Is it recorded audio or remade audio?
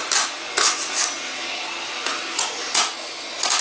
recorded